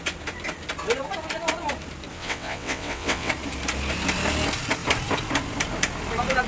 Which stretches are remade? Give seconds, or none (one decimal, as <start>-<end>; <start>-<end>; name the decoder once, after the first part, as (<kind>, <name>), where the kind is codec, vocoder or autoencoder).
2.1-3.3 (vocoder, WaveNeXt)